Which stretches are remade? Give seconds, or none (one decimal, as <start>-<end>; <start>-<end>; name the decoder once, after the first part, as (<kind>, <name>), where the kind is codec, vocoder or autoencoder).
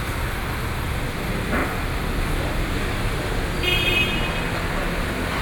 none